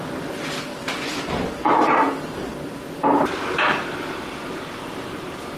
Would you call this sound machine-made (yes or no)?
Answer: yes